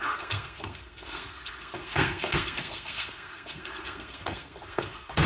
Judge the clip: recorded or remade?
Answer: remade